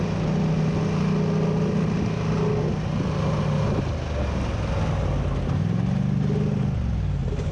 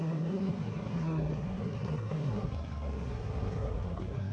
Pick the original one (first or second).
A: first